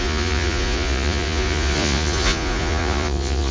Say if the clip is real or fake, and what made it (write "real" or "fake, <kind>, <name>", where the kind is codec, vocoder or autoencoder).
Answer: fake, vocoder, Vocos